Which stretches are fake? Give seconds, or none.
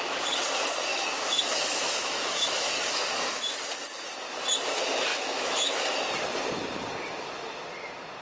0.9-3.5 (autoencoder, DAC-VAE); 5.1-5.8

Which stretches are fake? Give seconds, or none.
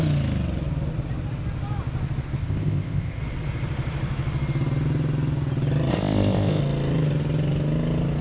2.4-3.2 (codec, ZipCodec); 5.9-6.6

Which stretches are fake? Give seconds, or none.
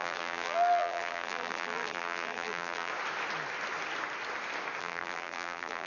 0.0-2.9 (vocoder, BigVGAN v2); 4.8-5.9